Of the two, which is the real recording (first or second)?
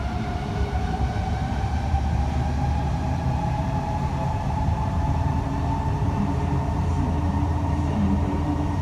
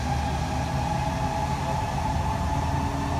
second